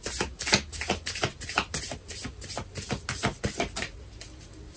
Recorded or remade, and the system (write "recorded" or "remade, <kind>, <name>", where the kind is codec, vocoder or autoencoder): recorded